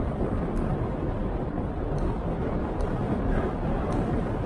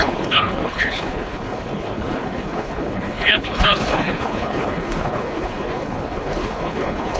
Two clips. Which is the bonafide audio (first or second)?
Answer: first